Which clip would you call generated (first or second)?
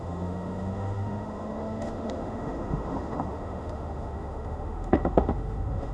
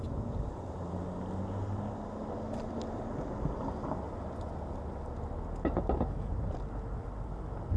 first